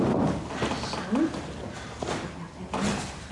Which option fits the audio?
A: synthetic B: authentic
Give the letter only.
B